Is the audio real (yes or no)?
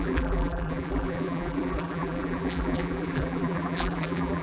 no